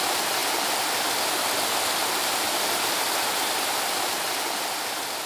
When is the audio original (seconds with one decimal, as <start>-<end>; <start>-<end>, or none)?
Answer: 0.0-5.3